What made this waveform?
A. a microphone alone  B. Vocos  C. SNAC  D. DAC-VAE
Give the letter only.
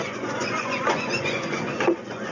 B